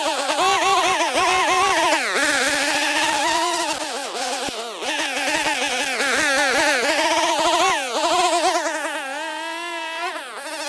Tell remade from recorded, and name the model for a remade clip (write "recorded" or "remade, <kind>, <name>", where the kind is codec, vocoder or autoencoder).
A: recorded